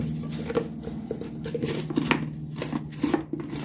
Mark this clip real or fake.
real